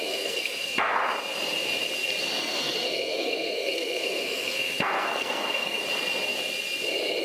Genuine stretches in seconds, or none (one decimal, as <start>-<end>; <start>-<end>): 1.0-2.4; 5.8-7.2